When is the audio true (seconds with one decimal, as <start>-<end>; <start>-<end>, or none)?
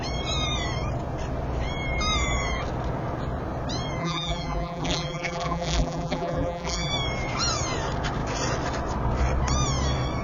0.0-4.0; 6.9-10.2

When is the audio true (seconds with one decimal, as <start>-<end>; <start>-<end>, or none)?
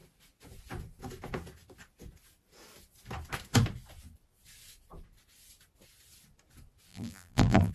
0.0-6.9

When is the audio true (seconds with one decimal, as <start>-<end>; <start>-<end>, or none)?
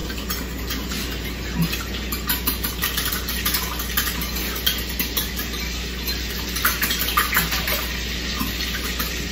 0.0-9.3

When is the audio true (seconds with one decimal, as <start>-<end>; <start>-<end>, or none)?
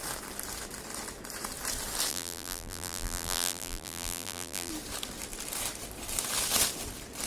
0.0-2.1; 4.7-7.3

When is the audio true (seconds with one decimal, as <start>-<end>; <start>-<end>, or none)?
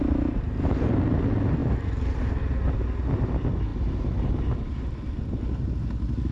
0.0-1.6; 2.2-3.7; 4.4-6.3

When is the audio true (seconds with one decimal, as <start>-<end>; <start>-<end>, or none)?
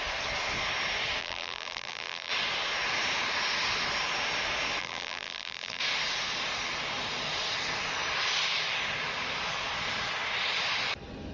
0.0-1.2; 2.3-4.8; 5.8-11.3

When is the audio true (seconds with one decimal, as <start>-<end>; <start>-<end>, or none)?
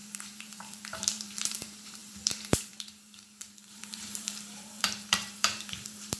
none